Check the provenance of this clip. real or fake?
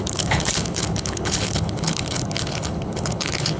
fake